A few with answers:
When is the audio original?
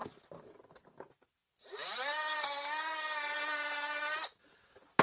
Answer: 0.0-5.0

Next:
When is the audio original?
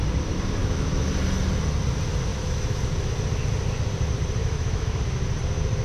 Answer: 0.0-0.6; 1.1-2.3; 2.8-4.4; 5.0-5.8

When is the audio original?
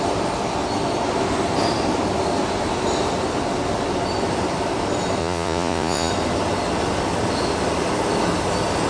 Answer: 0.0-5.2; 6.1-8.9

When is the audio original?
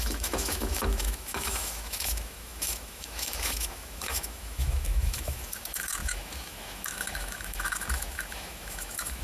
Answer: none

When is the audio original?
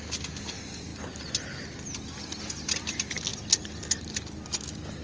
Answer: 0.0-5.0